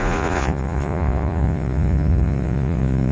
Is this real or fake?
fake